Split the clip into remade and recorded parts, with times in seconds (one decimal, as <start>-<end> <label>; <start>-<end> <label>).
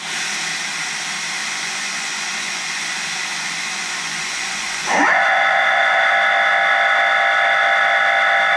0.0-1.4 recorded; 1.4-6.1 remade; 6.1-8.6 recorded